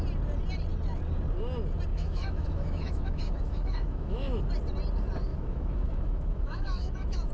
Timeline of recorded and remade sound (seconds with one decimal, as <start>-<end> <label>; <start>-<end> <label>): 0.0-1.9 recorded; 1.9-4.4 remade; 4.4-5.3 recorded; 5.3-7.3 remade